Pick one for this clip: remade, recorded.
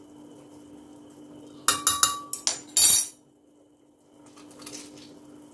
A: recorded